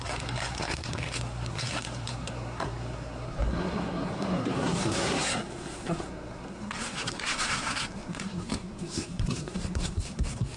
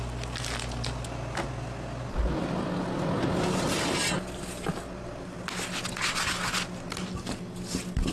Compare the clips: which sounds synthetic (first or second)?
first